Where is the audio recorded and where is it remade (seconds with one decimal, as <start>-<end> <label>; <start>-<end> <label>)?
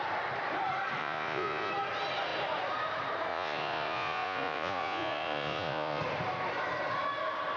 0.0-1.0 recorded; 1.0-1.7 remade; 1.7-3.3 recorded; 3.3-6.0 remade; 6.0-7.6 recorded